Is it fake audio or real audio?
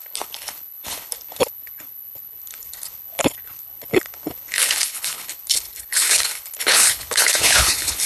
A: fake